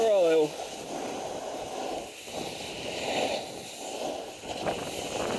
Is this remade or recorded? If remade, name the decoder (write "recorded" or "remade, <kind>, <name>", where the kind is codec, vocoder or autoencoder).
recorded